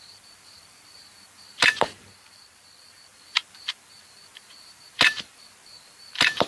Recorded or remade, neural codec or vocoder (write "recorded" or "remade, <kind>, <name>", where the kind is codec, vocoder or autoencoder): remade, vocoder, BigVGAN v2